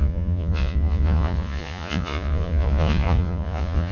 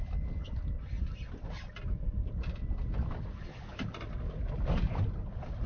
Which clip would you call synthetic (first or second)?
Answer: first